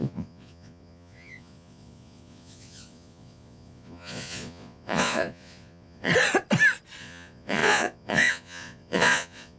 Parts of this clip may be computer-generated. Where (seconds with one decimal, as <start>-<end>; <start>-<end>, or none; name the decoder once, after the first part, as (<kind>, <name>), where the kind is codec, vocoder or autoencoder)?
0.0-6.1 (vocoder, Vocos); 7.0-9.6